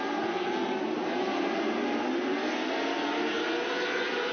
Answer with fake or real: real